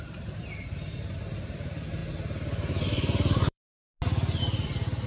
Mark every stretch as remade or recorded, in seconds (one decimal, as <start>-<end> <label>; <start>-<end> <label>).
0.0-2.0 remade; 2.0-2.7 recorded; 2.7-3.8 remade; 3.8-4.4 recorded; 4.4-5.1 remade

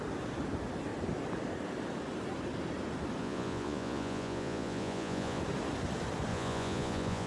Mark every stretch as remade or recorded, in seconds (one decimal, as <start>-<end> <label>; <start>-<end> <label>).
0.0-3.2 recorded; 3.2-5.4 remade; 5.4-6.3 recorded; 6.3-7.3 remade

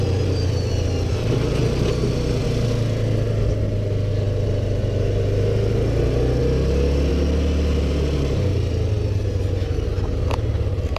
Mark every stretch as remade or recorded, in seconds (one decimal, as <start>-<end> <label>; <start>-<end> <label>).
0.0-11.0 recorded

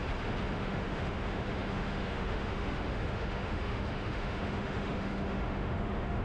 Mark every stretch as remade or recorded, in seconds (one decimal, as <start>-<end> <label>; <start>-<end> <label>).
0.0-0.6 recorded; 0.6-6.2 remade

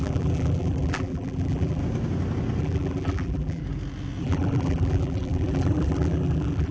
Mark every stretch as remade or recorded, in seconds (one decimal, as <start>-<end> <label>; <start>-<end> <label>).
0.0-1.8 remade; 1.8-2.6 recorded; 2.6-3.6 remade; 3.6-4.2 recorded; 4.2-6.7 remade

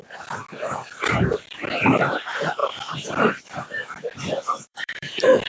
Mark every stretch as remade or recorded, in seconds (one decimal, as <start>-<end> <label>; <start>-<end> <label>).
0.0-0.4 remade; 0.4-0.9 recorded; 0.9-3.8 remade; 3.8-4.6 recorded; 4.6-5.5 remade